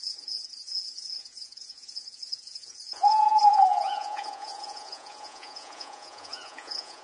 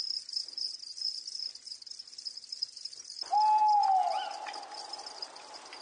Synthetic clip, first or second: first